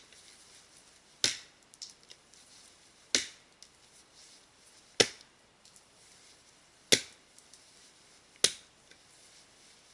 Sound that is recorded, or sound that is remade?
recorded